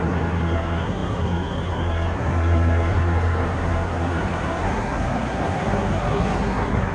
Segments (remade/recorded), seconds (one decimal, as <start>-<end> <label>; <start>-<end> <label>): 0.0-6.9 remade